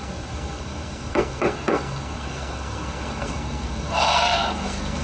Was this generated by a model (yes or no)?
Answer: yes